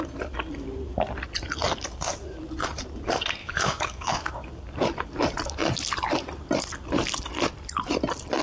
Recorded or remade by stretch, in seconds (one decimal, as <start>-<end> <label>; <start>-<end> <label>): 0.0-3.4 recorded; 3.4-4.3 remade; 4.3-8.4 recorded